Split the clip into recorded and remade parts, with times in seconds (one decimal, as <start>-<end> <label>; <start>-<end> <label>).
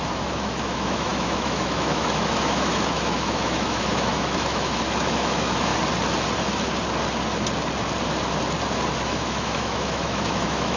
0.0-5.7 remade; 5.7-9.0 recorded; 9.0-10.8 remade